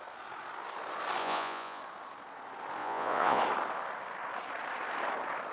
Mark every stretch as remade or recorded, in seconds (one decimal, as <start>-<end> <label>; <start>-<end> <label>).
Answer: 0.0-1.2 recorded; 1.2-1.8 remade; 1.8-2.8 recorded; 2.8-3.4 remade; 3.4-5.5 recorded